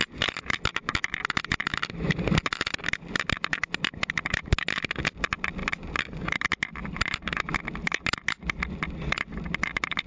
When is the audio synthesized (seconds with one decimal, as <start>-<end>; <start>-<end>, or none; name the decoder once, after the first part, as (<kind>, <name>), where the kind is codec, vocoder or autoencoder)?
none